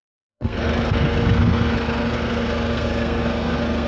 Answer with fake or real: fake